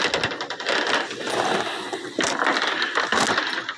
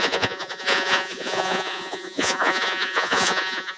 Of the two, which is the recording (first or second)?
first